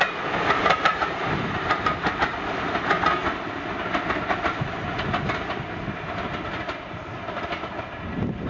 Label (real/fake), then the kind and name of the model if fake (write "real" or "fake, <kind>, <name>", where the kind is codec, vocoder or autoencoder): real